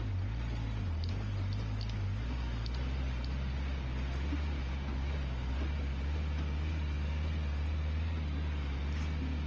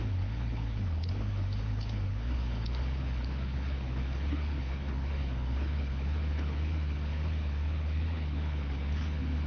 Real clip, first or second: first